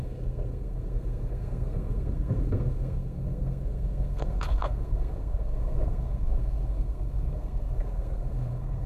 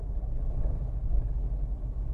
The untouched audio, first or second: second